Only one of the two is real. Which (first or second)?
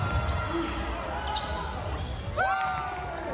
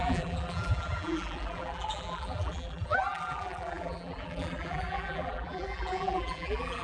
first